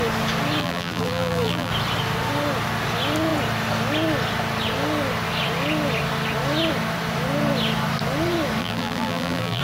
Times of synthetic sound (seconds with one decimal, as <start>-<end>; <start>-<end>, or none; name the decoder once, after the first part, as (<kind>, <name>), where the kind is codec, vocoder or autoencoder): 0.6-1.7 (vocoder, BigVGAN v2); 8.6-9.6